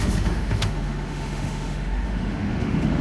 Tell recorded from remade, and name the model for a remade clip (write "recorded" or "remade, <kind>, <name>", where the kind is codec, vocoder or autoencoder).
remade, autoencoder, DAC-VAE